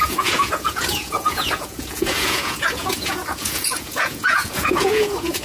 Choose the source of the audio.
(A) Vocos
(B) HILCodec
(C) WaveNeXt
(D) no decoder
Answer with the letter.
A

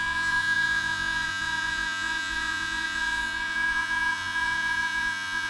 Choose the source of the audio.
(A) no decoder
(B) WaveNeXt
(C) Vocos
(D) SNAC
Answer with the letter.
C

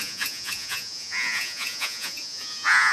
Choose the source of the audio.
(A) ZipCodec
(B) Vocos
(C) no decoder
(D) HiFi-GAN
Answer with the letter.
B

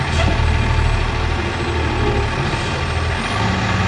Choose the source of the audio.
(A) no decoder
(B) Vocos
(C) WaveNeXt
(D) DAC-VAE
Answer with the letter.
A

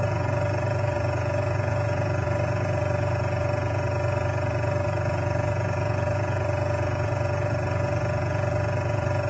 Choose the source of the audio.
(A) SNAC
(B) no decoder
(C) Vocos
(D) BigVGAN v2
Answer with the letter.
C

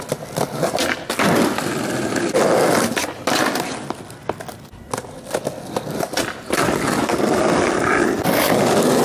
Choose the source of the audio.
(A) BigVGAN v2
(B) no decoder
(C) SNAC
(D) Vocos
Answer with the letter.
B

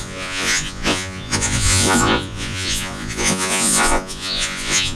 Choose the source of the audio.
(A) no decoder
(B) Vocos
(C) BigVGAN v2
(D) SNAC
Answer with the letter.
B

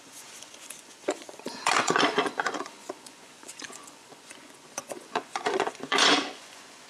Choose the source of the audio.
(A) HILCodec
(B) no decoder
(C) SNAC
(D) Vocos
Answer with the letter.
D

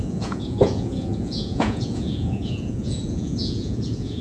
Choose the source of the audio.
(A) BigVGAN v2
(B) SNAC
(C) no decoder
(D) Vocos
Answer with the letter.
D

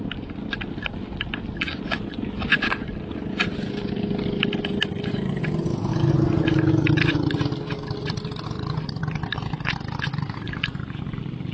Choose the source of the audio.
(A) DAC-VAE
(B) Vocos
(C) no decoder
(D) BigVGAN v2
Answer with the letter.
C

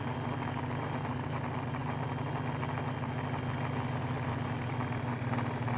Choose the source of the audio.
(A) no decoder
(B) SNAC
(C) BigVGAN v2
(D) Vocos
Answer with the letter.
A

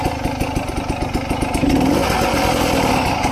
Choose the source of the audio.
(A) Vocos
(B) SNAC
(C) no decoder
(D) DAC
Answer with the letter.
C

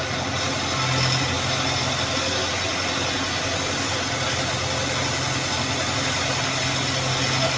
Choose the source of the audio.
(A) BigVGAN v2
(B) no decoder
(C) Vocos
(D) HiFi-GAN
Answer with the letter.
B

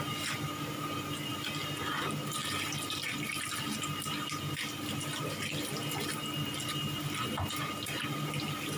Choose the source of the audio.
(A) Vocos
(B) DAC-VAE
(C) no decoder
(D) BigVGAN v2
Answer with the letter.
C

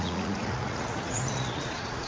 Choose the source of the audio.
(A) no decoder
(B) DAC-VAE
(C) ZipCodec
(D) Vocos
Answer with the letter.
D